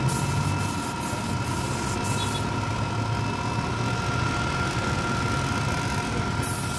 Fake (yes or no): no